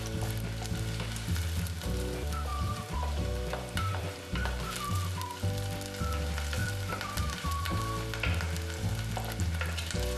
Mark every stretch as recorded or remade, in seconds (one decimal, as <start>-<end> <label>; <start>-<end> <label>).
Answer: 0.0-2.5 recorded; 2.5-4.9 remade; 4.9-6.6 recorded; 6.6-7.8 remade; 7.8-10.2 recorded